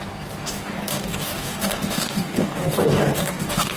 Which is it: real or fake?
fake